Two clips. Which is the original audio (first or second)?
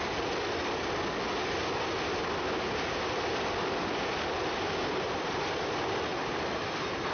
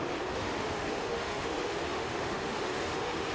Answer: first